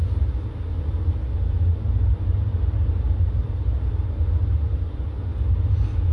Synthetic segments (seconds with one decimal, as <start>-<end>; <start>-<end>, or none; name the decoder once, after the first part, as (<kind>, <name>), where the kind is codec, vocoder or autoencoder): none